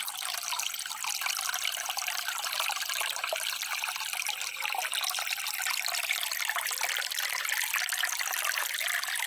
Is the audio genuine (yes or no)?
yes